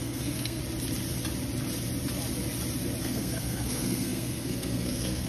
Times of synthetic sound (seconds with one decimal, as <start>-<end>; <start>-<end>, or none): 0.0-0.6; 3.0-5.3